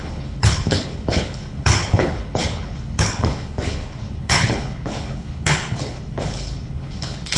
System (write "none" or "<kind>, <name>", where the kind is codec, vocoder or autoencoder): codec, HILCodec